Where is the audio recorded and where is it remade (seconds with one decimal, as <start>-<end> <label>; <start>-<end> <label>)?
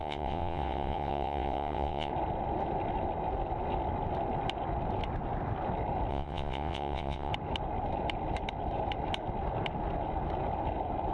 0.0-2.1 remade; 2.1-6.1 recorded; 6.1-7.3 remade; 7.3-11.1 recorded